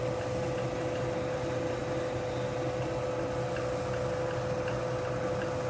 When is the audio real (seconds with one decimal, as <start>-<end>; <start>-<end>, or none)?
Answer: 0.0-5.7